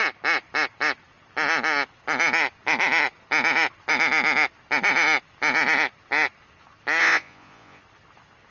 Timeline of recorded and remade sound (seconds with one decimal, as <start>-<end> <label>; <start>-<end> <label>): 0.0-7.0 recorded; 7.0-7.8 remade; 7.8-8.5 recorded